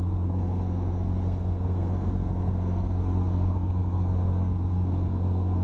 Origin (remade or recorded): remade